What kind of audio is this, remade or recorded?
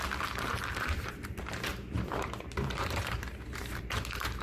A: remade